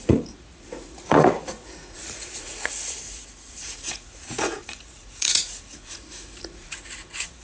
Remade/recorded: remade